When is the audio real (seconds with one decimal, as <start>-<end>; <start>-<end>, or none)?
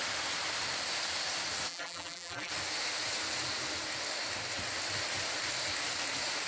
0.0-1.7; 2.5-6.5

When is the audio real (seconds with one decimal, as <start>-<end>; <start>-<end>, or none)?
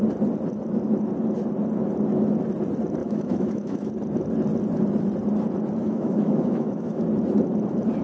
0.0-3.0; 3.9-5.8; 7.0-8.0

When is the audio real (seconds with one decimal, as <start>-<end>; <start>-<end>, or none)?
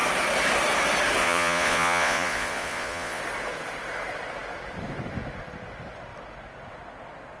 0.0-1.2; 3.2-7.4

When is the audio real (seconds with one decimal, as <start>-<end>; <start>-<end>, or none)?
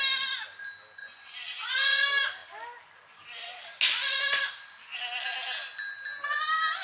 0.0-1.0; 2.0-6.8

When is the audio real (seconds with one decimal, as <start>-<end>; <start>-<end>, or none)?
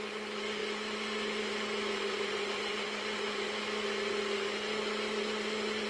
0.0-5.9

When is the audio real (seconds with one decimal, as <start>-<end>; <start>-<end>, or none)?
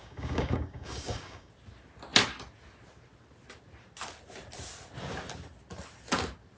1.5-6.6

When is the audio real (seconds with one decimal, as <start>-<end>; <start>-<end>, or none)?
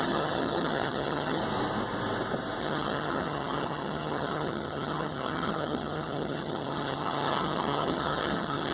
1.4-2.6